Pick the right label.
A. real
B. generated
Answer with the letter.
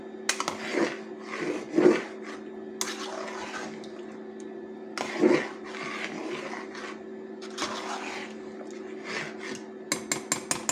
A